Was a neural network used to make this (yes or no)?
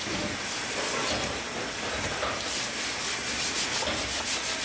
no